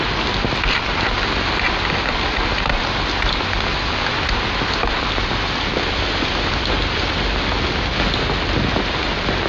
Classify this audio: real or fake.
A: real